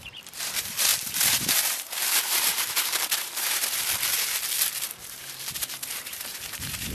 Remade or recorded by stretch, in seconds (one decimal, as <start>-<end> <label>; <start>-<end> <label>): 0.0-3.6 remade; 3.6-5.0 recorded; 5.0-6.9 remade